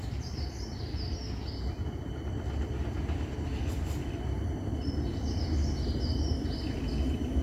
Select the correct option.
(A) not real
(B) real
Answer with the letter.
B